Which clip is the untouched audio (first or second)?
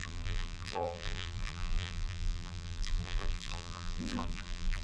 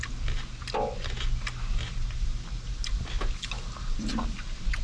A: second